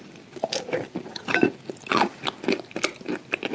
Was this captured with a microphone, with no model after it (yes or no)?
yes